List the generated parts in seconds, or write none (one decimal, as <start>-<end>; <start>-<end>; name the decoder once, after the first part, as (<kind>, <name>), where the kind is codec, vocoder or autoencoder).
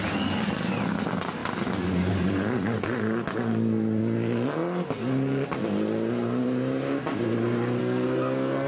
7.8-8.7 (codec, SNAC)